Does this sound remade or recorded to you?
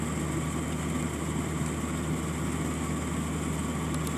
recorded